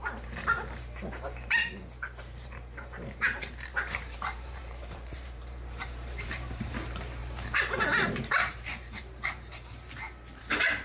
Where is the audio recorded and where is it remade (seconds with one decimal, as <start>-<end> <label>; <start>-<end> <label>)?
0.0-1.6 remade; 1.6-2.2 recorded; 2.2-10.8 remade